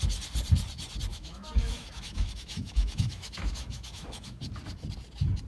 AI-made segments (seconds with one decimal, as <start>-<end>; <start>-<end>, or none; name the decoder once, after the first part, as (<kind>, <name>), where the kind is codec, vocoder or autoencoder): 1.1-4.4 (autoencoder, DAC-VAE)